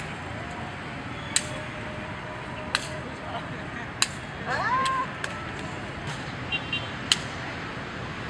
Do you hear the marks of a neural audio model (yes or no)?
no